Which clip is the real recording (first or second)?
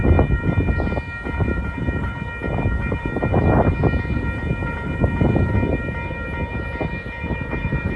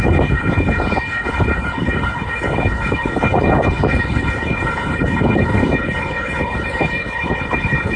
first